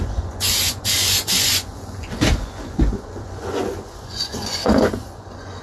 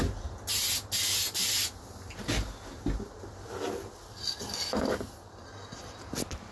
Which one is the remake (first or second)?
first